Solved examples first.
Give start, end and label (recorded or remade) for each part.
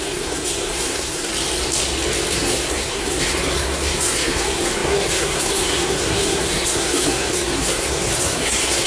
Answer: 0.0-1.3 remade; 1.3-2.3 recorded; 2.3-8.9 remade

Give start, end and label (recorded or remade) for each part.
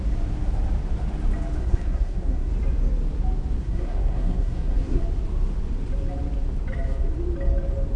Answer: 0.0-1.6 recorded; 1.6-2.5 remade; 2.5-3.6 recorded; 3.6-5.0 remade; 5.0-8.0 recorded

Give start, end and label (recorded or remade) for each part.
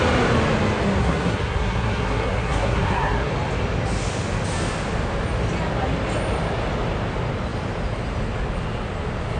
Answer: 0.0-1.0 recorded; 1.0-3.3 remade; 3.3-9.4 recorded